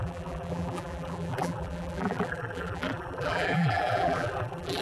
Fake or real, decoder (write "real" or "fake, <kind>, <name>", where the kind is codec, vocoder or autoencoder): fake, vocoder, BigVGAN v2